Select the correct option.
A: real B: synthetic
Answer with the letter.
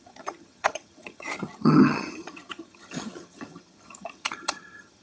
B